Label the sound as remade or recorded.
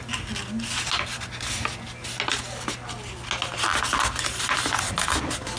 recorded